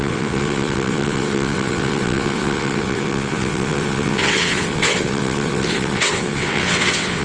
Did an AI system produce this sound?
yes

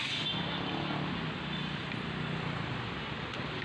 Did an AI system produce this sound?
no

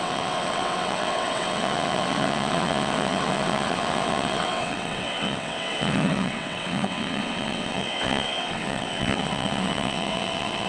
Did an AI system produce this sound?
yes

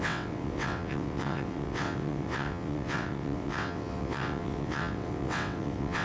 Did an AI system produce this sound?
yes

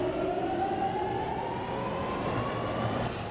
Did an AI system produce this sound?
no